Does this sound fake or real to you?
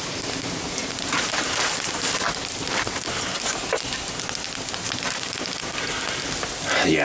real